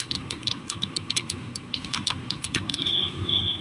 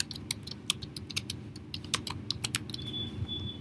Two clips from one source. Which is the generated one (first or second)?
first